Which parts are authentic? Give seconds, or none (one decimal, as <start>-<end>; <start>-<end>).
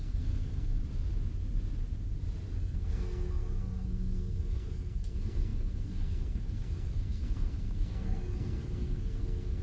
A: 0.8-2.6